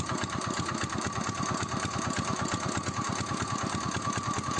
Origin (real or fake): fake